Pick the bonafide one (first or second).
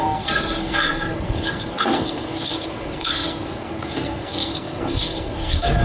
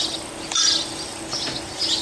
second